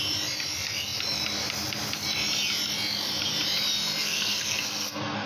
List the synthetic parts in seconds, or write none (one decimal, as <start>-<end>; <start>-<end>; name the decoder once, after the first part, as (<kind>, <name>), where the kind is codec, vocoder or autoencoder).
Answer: 4.0-5.3 (codec, SNAC)